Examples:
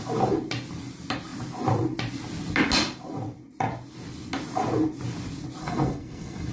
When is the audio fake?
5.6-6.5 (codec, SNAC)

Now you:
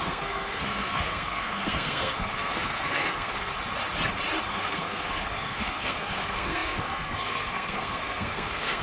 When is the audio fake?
0.0-3.5 (codec, SNAC); 4.5-8.8

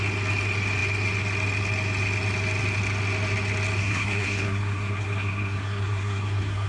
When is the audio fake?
3.8-6.7 (codec, SNAC)

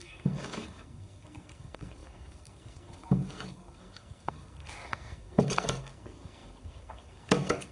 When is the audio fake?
0.0-7.7 (codec, SNAC)

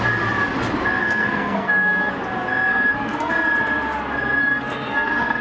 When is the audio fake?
1.0-2.1 (codec, SNAC); 2.7-3.3; 4.4-5.4

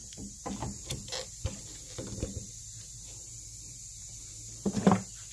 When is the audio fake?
none

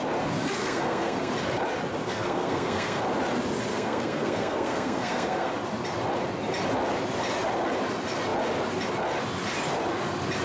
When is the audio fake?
0.6-1.3 (codec, SNAC); 2.0-3.0; 3.7-5.5